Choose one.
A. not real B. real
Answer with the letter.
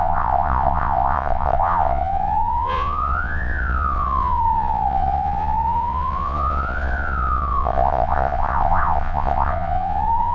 A